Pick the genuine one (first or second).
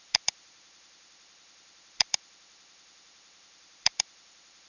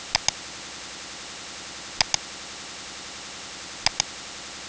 second